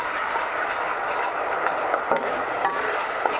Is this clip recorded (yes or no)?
no